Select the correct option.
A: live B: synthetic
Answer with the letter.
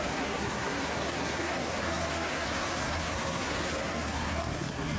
B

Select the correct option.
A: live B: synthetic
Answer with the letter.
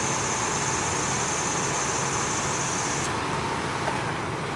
A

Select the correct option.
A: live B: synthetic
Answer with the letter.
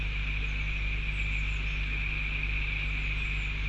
A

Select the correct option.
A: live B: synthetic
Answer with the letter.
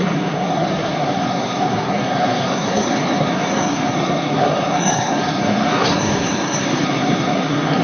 B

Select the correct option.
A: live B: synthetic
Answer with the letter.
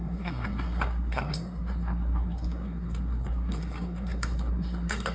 B